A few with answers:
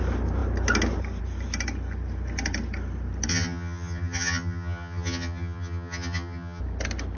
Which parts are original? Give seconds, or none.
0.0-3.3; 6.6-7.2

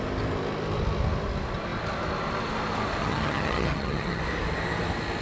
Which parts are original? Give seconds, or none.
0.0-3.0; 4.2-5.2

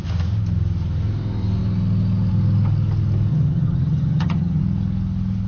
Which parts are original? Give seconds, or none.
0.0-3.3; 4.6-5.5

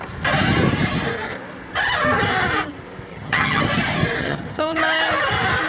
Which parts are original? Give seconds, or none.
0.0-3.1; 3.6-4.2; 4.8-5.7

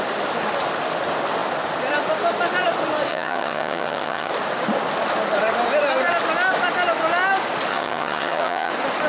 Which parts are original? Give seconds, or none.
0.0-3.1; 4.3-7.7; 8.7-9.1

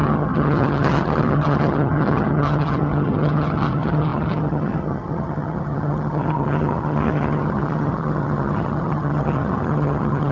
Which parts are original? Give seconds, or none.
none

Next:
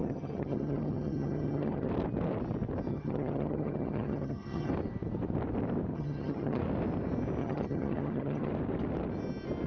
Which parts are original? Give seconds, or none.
1.9-2.9; 4.7-5.9; 6.6-7.4; 8.5-9.7

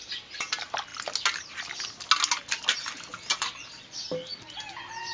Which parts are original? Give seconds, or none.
0.0-5.1